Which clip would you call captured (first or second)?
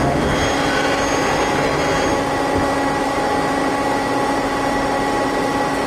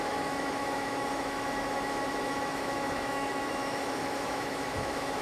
first